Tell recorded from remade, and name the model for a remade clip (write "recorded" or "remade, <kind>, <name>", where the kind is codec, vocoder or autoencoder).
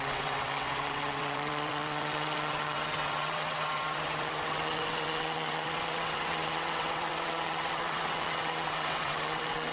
remade, vocoder, WaveNeXt